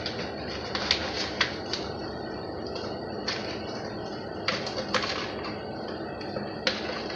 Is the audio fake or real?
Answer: real